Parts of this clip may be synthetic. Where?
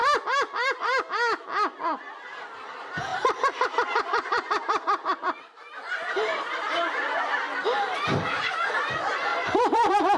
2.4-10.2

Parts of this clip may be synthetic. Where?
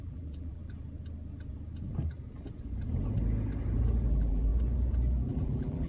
0.0-0.6; 4.1-4.5; 5.3-5.9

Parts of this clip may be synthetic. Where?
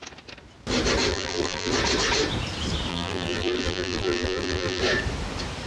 1.1-1.7; 2.9-4.8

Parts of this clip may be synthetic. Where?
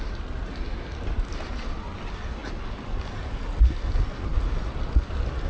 2.4-3.0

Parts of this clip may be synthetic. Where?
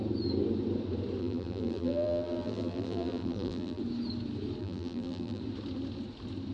1.2-3.8; 4.6-5.4